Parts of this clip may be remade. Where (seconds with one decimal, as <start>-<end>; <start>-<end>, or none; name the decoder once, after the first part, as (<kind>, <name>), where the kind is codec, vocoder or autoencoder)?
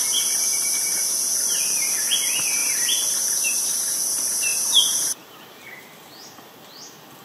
0.5-1.9 (vocoder, BigVGAN v2); 2.6-3.6; 4.5-6.1